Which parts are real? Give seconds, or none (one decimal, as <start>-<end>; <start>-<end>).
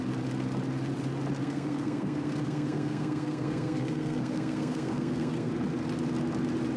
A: 0.0-1.4; 5.5-6.8